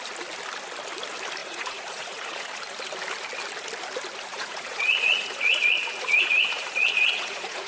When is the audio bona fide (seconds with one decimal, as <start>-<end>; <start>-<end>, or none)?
0.0-1.4; 2.6-4.3